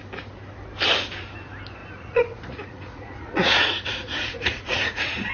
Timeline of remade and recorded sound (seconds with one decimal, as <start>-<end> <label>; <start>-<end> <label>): 0.0-1.8 recorded; 1.8-5.3 remade